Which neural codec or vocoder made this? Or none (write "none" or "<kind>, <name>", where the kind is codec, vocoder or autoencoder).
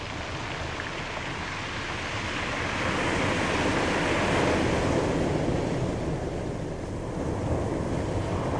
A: none